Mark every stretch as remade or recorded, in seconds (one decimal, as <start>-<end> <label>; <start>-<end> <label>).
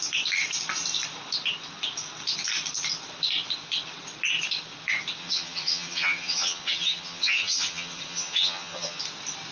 0.0-5.2 recorded; 5.2-9.0 remade; 9.0-9.5 recorded